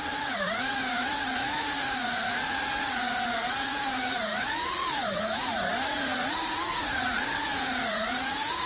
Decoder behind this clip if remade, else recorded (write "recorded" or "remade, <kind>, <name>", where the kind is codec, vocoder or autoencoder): remade, vocoder, Vocos